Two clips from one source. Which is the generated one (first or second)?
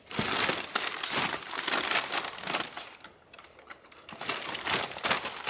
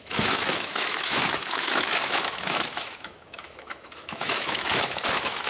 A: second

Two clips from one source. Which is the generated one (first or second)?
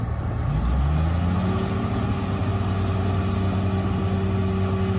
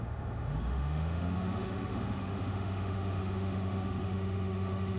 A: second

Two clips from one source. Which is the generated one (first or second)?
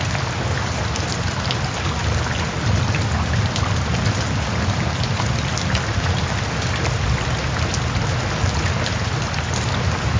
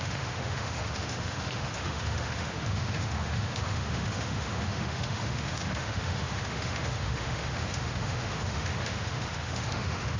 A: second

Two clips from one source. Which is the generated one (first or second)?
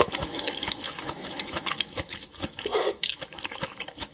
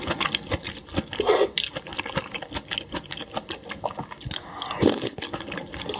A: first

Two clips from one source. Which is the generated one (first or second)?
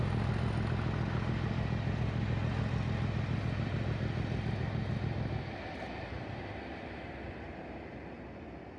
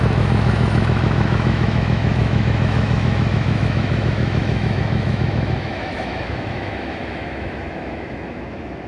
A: second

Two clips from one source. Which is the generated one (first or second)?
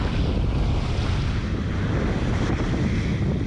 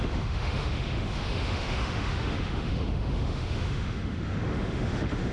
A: second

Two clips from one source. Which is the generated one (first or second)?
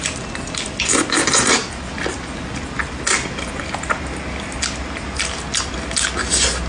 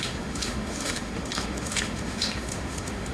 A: second